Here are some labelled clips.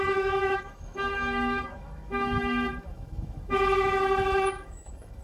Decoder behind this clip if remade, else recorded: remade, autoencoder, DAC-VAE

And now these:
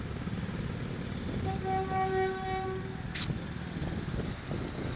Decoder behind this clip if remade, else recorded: recorded